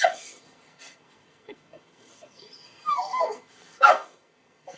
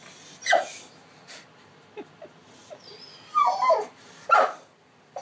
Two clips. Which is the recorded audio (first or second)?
second